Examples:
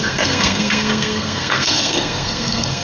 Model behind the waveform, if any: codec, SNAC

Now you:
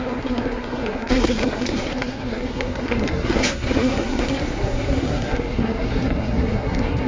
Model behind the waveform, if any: codec, SNAC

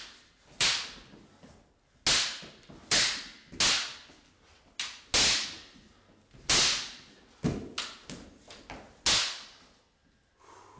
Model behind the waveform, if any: none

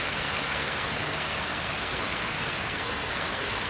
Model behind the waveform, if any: codec, SNAC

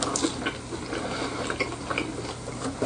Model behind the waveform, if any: none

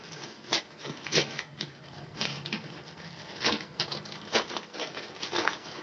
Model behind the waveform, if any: codec, SNAC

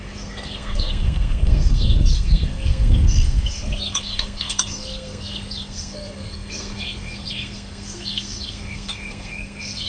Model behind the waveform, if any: codec, SNAC